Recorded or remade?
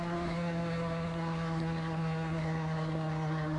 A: remade